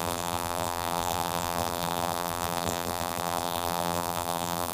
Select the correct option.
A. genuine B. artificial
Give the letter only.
B